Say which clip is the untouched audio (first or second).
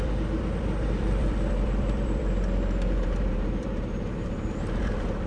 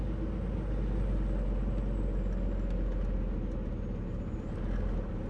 second